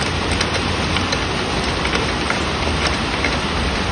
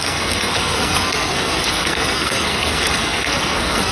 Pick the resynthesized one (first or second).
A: second